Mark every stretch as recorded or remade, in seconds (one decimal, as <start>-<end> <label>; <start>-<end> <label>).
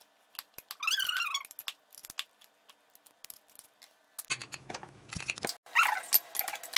0.0-4.4 recorded; 4.4-5.1 remade; 5.1-6.8 recorded